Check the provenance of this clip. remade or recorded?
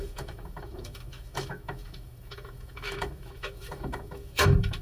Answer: remade